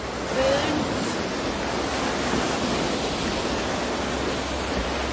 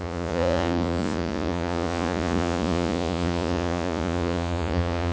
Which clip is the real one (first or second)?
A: first